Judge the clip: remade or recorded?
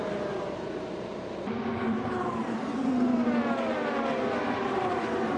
remade